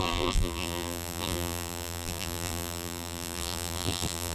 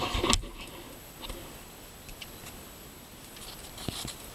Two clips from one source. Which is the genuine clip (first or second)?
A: second